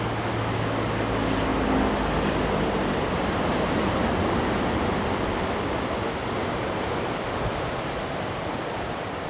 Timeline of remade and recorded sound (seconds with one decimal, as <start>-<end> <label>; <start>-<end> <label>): 0.0-9.3 recorded